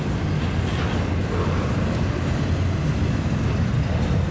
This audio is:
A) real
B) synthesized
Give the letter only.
A